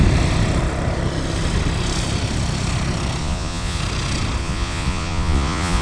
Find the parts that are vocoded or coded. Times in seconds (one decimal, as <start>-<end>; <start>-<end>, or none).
3.2-3.8; 4.4-5.8